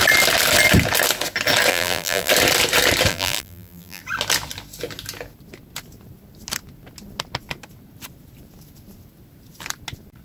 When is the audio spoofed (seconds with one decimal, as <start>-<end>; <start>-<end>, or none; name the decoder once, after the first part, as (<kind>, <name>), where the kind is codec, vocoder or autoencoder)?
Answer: 1.7-2.3 (vocoder, BigVGAN v2); 3.1-4.0